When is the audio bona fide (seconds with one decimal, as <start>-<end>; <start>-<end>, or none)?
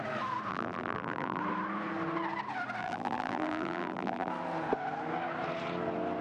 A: 0.0-0.5; 1.4-2.8; 4.3-6.2